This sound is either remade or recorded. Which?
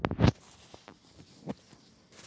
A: recorded